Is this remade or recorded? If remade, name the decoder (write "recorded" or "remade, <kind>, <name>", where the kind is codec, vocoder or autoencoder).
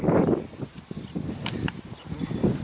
recorded